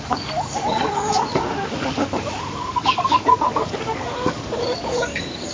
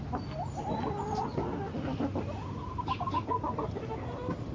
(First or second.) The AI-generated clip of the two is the first